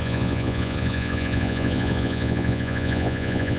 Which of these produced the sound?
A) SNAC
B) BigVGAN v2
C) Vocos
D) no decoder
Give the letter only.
C